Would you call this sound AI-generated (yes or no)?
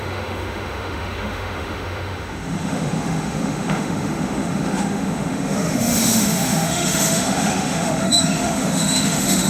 yes